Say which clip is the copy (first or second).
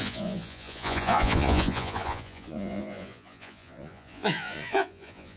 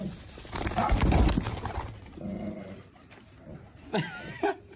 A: first